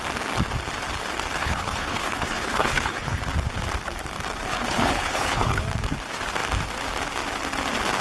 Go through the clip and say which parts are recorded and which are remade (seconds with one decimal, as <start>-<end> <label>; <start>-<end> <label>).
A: 0.0-1.4 recorded; 1.4-3.2 remade; 3.2-4.5 recorded; 4.5-5.6 remade; 5.6-8.0 recorded